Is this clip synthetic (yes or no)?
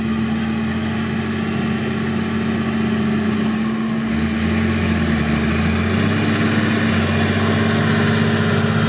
no